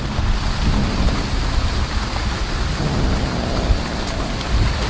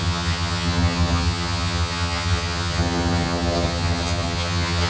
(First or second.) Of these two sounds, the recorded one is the first